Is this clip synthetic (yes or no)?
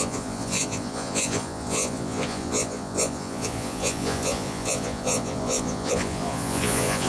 yes